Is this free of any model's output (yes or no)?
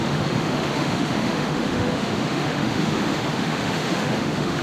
no